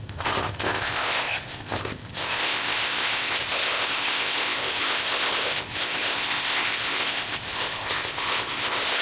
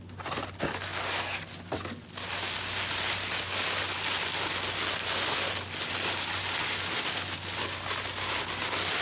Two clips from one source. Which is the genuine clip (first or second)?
second